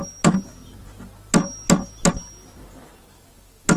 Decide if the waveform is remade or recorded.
recorded